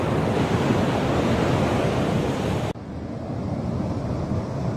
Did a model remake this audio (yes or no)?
no